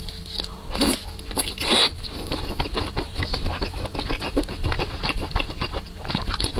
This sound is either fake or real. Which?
real